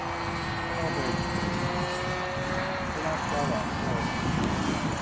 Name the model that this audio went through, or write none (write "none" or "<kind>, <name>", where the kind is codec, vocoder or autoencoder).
none